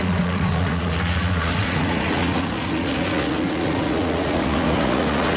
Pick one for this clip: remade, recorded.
remade